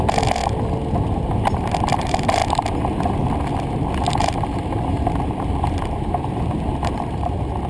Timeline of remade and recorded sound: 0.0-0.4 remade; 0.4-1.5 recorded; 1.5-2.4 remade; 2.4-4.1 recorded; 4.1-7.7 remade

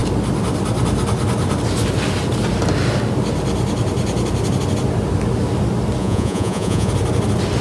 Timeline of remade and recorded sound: 0.0-6.0 recorded; 6.0-6.9 remade; 6.9-7.6 recorded

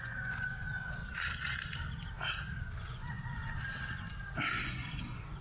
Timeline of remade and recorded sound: 0.0-1.0 remade; 1.0-2.6 recorded; 2.6-3.6 remade; 3.6-4.6 recorded; 4.6-5.4 remade

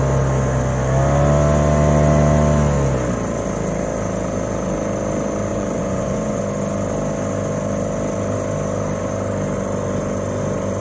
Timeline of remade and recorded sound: 0.0-5.5 recorded; 5.5-6.4 remade; 6.4-10.8 recorded

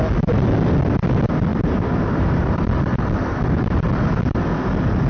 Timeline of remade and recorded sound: 0.0-1.5 recorded; 1.5-2.6 remade; 2.6-5.1 recorded